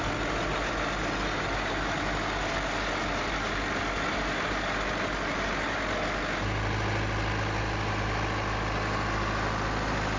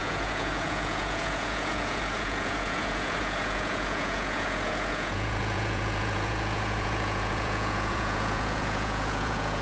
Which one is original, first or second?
first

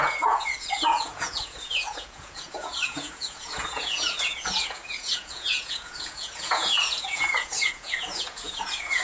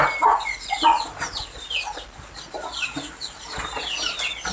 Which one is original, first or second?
second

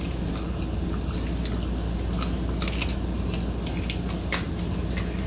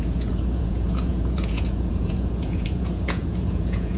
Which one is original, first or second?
first